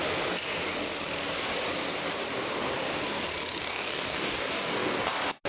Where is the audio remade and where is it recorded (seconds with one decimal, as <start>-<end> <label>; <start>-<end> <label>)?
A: 0.0-3.6 recorded; 3.6-5.0 remade; 5.0-5.5 recorded